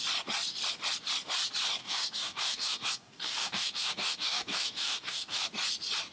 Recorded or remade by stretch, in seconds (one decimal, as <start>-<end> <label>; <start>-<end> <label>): 0.0-1.8 recorded; 1.8-5.4 remade; 5.4-6.1 recorded